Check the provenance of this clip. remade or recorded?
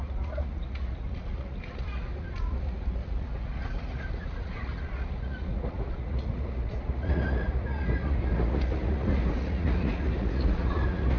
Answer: remade